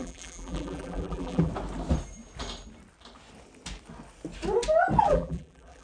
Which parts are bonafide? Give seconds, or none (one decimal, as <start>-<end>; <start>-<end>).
1.5-5.0